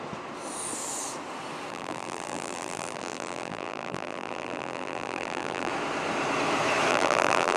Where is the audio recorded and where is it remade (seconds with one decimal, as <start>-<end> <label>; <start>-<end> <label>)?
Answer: 0.0-1.7 recorded; 1.7-5.7 remade; 5.7-6.9 recorded; 6.9-7.6 remade